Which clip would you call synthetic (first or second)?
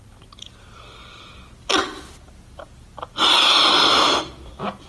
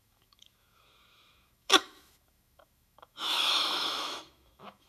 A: second